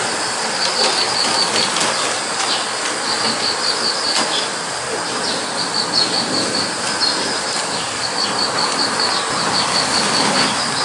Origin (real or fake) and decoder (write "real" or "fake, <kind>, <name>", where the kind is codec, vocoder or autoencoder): real